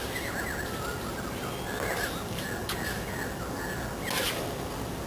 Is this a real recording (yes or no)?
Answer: yes